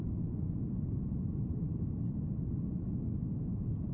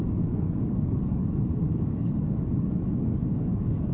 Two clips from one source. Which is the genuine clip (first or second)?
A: first